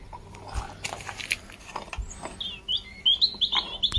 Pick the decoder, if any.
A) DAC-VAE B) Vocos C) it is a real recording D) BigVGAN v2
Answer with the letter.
C